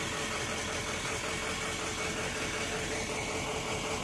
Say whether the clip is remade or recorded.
recorded